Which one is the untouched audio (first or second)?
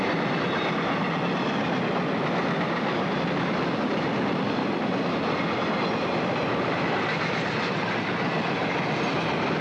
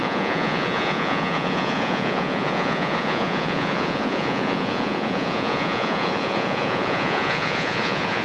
first